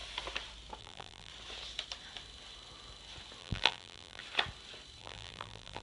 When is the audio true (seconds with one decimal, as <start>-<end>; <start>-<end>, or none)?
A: 0.0-0.8; 1.3-3.4; 4.2-5.0